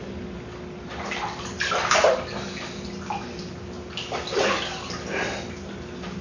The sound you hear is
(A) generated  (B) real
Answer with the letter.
B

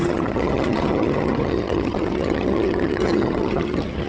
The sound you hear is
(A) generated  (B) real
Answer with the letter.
A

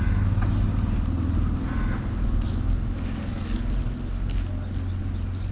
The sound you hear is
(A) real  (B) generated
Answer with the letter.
A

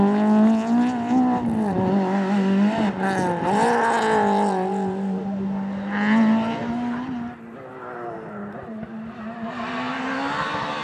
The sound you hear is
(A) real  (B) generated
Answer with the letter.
A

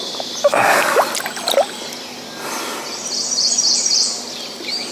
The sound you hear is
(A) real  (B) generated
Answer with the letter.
A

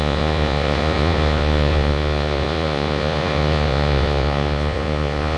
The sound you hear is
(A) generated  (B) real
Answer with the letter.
A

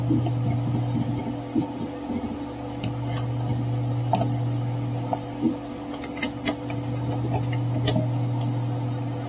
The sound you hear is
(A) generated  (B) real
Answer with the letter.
B